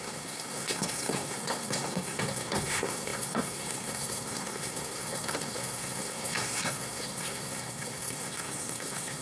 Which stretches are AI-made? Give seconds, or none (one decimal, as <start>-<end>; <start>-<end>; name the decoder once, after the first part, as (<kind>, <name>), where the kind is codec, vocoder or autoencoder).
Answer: 0.0-9.2 (codec, SNAC)